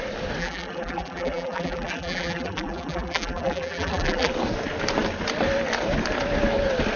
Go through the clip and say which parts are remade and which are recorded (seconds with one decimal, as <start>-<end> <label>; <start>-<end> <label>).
0.0-0.4 recorded; 0.4-4.3 remade; 4.3-7.0 recorded